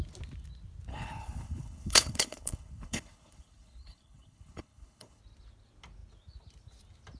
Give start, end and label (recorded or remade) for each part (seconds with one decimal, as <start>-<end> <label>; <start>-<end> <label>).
0.0-0.9 recorded; 0.9-5.2 remade; 5.2-7.2 recorded